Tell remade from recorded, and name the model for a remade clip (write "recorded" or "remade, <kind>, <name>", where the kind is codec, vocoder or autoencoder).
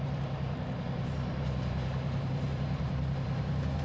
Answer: remade, vocoder, BigVGAN v2